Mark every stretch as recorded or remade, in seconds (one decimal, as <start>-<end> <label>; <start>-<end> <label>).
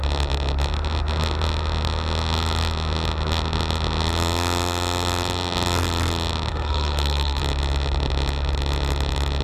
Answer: 0.0-6.5 recorded; 6.5-7.4 remade; 7.4-9.4 recorded